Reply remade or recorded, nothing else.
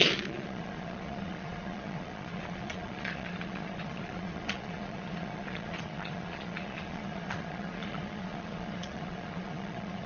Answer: remade